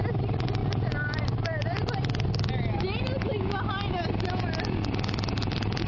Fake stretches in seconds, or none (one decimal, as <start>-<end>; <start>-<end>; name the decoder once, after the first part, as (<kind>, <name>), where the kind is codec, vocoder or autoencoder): none